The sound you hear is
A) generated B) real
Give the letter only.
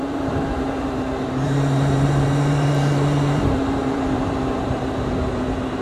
A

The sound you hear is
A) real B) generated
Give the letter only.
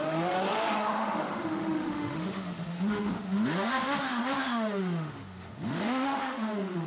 B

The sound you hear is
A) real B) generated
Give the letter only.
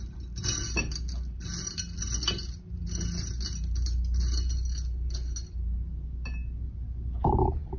A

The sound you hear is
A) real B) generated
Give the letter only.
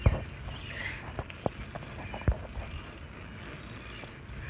A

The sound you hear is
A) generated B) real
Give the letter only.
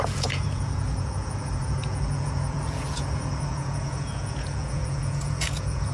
A